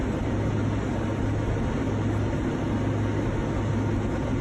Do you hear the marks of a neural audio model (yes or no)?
no